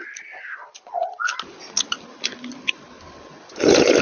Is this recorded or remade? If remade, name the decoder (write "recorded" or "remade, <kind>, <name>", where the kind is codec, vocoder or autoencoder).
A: recorded